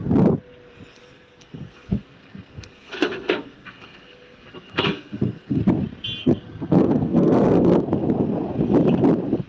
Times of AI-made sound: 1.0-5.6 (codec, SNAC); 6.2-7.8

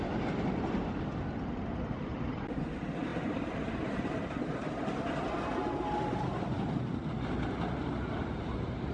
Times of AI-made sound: 1.7-2.7 (vocoder, BigVGAN v2); 3.1-4.7; 8.2-8.9

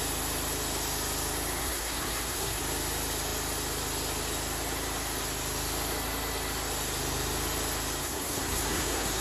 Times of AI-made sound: 1.6-2.6 (codec, SNAC); 8.0-9.2

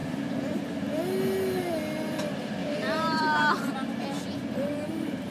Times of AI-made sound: 0.0-0.7 (vocoder, BigVGAN v2); 2.6-3.2